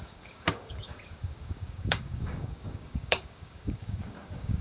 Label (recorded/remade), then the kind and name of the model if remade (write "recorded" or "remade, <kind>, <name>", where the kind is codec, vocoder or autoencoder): remade, codec, DAC